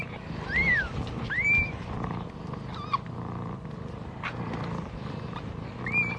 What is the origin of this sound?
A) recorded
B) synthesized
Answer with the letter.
A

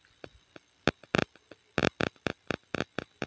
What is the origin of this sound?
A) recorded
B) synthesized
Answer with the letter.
A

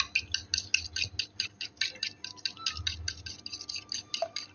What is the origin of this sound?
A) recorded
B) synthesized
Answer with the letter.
A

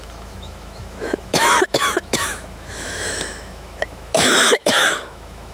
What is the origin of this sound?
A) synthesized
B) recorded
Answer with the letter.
A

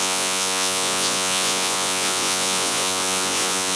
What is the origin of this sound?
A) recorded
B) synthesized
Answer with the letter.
B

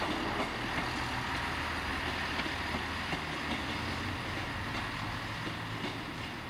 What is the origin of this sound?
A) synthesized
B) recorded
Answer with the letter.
B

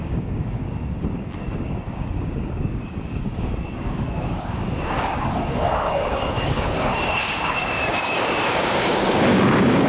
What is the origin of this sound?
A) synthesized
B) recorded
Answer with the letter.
A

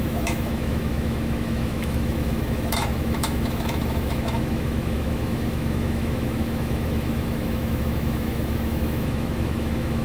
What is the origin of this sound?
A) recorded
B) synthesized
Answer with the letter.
B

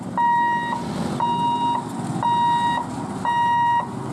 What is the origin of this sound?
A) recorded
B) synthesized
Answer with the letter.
A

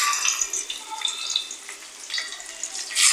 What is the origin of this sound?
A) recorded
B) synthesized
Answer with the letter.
A